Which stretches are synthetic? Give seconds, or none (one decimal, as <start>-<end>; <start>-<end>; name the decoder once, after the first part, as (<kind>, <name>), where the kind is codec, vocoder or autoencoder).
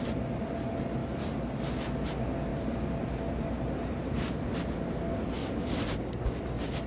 2.5-4.9 (vocoder, BigVGAN v2); 5.4-5.9